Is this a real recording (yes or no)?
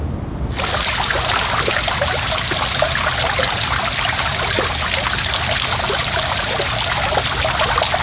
no